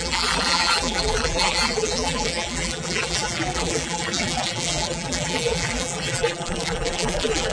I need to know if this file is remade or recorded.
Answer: remade